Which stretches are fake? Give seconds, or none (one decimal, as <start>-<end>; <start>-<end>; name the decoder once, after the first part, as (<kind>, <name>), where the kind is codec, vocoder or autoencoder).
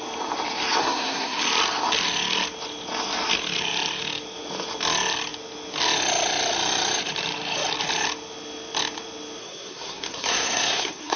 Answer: 0.8-1.4 (codec, SNAC); 9.4-11.2